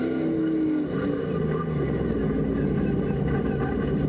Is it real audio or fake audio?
real